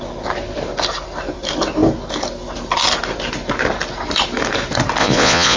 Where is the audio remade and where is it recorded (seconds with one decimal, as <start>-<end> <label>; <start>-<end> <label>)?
0.0-5.0 recorded; 5.0-5.6 remade